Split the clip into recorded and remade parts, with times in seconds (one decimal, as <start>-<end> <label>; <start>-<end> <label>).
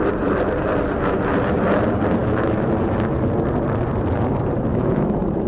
0.0-2.2 recorded; 2.2-2.7 remade; 2.7-4.7 recorded; 4.7-5.5 remade